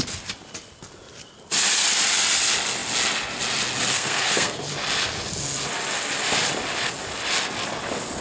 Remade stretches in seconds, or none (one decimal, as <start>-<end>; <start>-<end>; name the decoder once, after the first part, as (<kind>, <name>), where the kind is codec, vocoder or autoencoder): 3.9-4.6 (codec, SNAC)